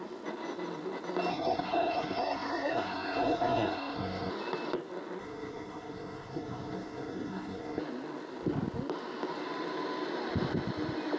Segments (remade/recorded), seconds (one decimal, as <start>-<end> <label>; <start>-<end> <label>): 0.0-1.3 recorded; 1.3-4.3 remade; 4.3-5.2 recorded; 5.2-7.8 remade; 7.8-11.2 recorded